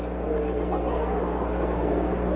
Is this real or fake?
fake